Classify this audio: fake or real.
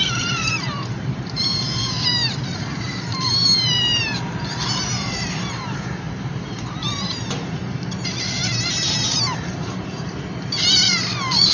fake